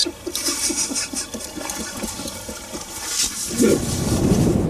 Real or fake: real